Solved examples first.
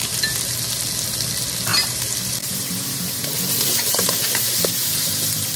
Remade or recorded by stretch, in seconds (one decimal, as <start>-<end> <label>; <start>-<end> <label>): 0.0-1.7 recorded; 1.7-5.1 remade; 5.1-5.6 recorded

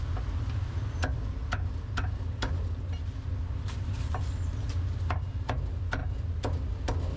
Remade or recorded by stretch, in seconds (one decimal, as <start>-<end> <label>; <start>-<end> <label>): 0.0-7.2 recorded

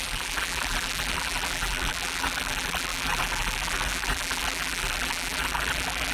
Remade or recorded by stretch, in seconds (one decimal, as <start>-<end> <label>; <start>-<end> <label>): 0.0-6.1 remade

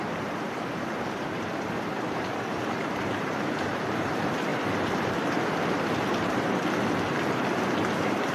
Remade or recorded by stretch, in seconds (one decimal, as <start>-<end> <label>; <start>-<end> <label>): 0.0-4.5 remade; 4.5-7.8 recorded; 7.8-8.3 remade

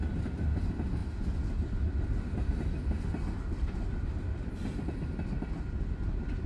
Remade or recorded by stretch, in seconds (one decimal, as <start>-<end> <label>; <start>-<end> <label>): 0.0-6.5 recorded

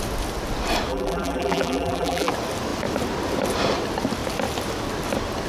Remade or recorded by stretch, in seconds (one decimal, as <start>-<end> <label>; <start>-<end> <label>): 0.0-0.9 recorded; 0.9-2.3 remade; 2.3-5.5 recorded

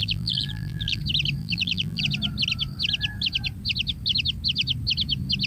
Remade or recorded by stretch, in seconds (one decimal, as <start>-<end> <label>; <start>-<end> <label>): 0.0-1.0 remade; 1.0-1.4 recorded; 1.4-2.0 remade; 2.0-5.5 recorded